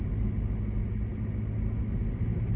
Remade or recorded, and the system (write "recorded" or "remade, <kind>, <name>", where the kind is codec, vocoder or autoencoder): recorded